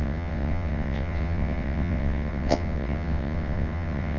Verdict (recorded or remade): remade